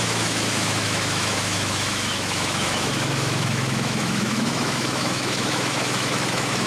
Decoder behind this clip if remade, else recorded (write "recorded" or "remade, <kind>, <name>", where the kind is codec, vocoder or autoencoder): remade, autoencoder, DAC-VAE